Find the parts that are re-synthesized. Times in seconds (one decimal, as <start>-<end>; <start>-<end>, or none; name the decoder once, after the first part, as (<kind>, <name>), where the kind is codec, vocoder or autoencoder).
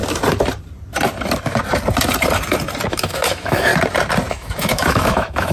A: 2.9-3.7 (autoencoder, DAC-VAE); 4.3-5.5